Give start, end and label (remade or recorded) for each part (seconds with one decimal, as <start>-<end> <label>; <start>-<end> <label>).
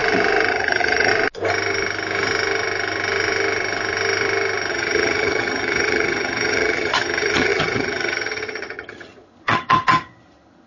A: 0.0-0.5 recorded; 0.5-1.1 remade; 1.1-4.7 recorded; 4.7-10.7 remade